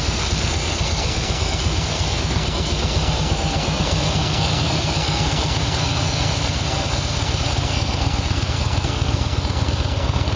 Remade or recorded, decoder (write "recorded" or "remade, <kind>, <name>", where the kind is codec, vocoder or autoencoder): remade, codec, SNAC